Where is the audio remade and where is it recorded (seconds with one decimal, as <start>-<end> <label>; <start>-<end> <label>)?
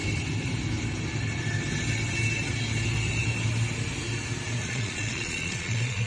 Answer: 0.0-4.6 recorded; 4.6-6.1 remade